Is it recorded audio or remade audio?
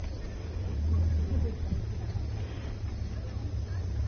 recorded